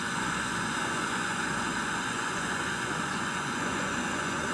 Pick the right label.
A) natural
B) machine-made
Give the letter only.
B